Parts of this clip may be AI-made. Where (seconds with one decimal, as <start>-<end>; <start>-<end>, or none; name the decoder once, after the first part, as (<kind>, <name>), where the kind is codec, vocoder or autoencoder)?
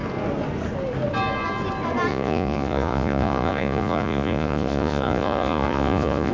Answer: 2.1-6.3 (vocoder, Vocos)